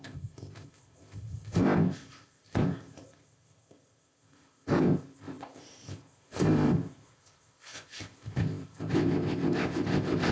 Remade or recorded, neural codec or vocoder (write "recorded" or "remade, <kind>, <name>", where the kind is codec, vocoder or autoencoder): remade, codec, ZipCodec